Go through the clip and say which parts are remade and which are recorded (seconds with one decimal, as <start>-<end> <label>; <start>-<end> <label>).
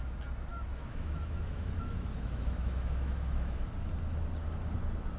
0.0-0.5 recorded; 0.5-3.6 remade; 3.6-5.2 recorded